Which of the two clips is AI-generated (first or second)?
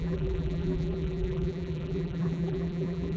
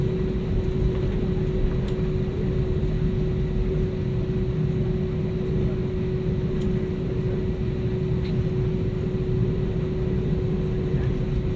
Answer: first